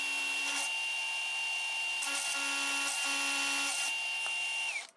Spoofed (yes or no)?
no